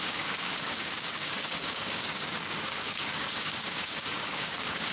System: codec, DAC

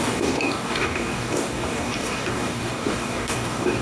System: codec, DAC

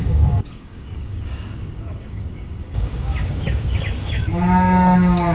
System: codec, DAC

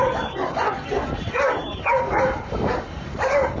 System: codec, DAC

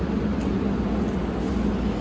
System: none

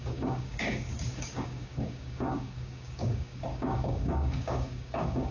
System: codec, DAC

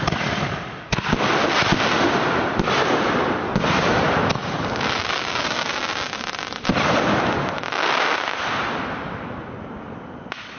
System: none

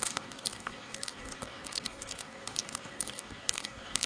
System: codec, DAC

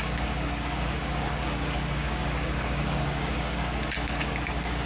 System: codec, DAC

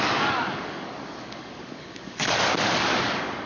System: codec, DAC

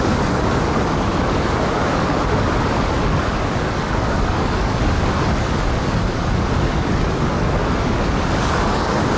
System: codec, DAC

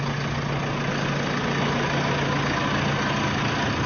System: none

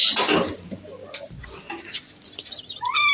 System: none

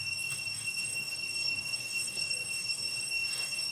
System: codec, DAC